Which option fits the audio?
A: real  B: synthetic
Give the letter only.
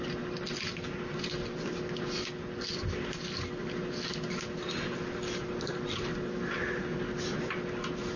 A